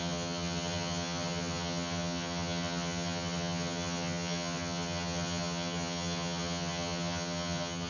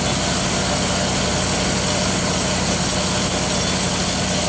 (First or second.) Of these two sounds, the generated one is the first